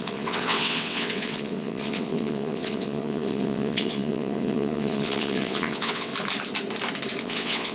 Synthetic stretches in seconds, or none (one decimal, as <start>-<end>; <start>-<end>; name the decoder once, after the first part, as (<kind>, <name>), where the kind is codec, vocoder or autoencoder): 0.0-6.1 (vocoder, WaveNeXt); 7.2-7.7